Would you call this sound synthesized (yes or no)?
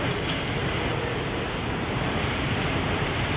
no